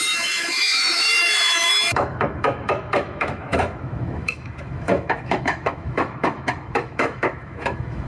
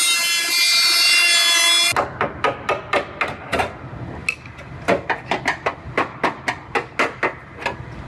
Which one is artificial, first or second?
first